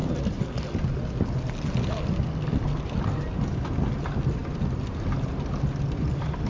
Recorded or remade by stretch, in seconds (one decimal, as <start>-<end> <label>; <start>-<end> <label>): 0.0-6.5 recorded